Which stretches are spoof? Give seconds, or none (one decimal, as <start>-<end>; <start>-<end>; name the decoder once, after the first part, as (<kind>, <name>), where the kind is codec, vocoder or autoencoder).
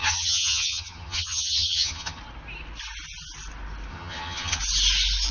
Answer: 0.0-2.2 (vocoder, HiFi-GAN); 3.9-4.6